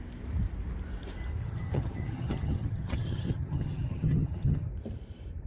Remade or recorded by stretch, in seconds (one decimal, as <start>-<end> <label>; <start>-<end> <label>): 0.0-1.4 recorded; 1.4-4.7 remade; 4.7-5.5 recorded